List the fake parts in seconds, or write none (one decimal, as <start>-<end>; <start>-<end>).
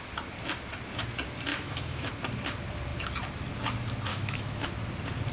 1.5-2.1; 4.1-4.7